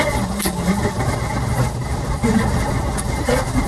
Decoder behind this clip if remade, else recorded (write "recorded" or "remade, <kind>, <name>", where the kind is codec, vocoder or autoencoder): recorded